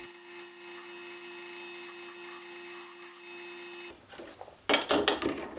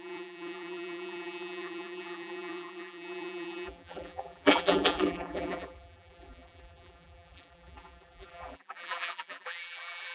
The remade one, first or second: second